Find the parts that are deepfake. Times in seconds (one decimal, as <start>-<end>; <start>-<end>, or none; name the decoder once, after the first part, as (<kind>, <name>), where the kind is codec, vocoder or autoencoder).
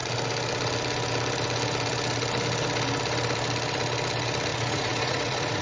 4.5-5.6 (vocoder, Vocos)